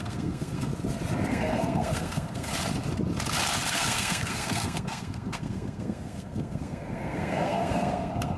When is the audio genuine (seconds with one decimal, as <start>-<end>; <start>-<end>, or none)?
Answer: 0.7-1.3; 2.5-3.7